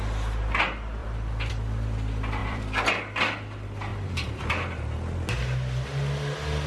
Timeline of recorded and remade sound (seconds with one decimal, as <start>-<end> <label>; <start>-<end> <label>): 0.0-1.0 recorded; 1.0-1.5 remade; 1.5-2.4 recorded; 2.4-3.2 remade; 3.2-6.7 recorded